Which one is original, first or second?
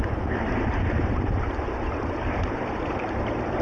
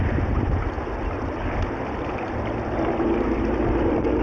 second